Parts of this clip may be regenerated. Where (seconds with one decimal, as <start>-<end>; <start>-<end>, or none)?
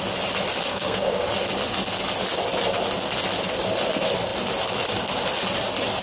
0.7-1.2